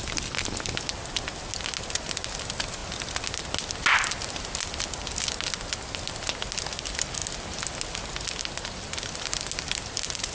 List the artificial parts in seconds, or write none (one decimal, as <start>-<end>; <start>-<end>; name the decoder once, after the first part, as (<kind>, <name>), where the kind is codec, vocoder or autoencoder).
none